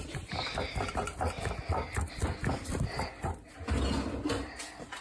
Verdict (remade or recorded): recorded